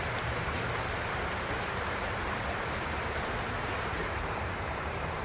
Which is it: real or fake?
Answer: fake